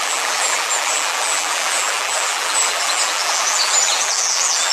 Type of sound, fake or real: fake